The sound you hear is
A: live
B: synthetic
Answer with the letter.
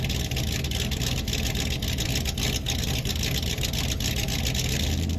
A